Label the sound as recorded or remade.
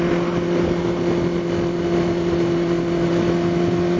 recorded